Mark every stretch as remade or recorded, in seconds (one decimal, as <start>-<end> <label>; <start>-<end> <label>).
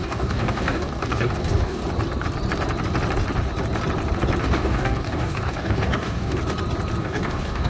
0.0-1.8 remade; 1.8-4.4 recorded; 4.4-6.4 remade; 6.4-7.0 recorded; 7.0-7.7 remade